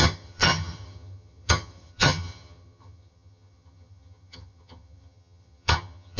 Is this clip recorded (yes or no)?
no